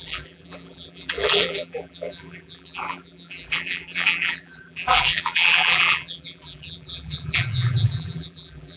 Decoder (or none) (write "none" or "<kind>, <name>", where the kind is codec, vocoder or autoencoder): vocoder, BigVGAN v2